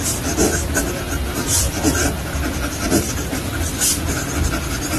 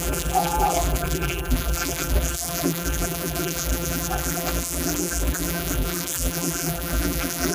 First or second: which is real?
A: first